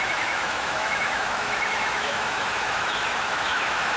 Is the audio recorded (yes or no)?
no